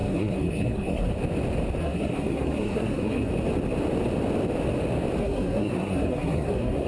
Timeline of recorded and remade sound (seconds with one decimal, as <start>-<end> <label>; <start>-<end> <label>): 0.0-1.1 remade; 1.1-1.8 recorded; 1.8-3.3 remade; 3.3-5.2 recorded; 5.2-6.9 remade